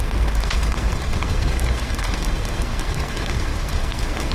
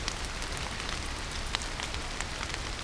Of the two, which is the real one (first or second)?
second